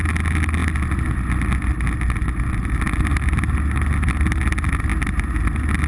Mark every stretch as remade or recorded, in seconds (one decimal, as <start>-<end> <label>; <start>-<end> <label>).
0.0-5.9 recorded